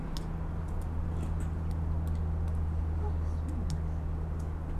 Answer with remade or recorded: recorded